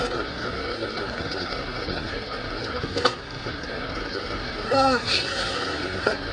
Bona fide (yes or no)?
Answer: no